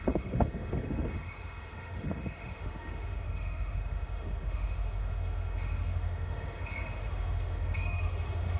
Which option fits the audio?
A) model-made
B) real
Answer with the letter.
A